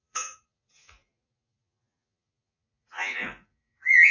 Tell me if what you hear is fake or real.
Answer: fake